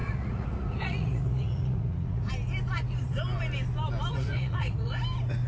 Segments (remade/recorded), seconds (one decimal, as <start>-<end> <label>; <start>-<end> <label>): 0.0-2.3 remade; 2.3-4.1 recorded; 4.1-4.9 remade; 4.9-5.5 recorded